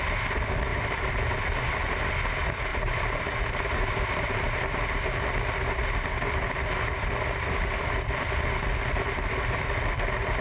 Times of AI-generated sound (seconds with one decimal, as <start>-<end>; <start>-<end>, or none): 0.7-1.6; 2.7-4.5